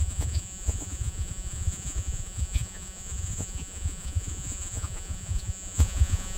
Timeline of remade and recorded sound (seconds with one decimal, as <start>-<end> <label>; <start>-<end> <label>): 0.0-6.4 remade